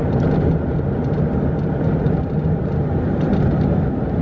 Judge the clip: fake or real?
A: real